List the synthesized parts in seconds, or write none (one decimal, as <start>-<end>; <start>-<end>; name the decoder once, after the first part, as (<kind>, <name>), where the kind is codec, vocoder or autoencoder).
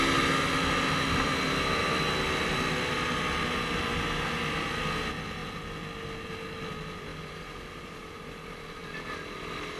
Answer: none